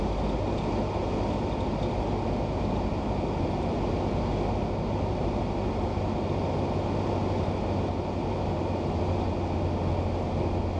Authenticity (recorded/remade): recorded